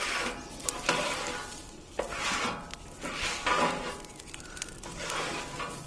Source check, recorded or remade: recorded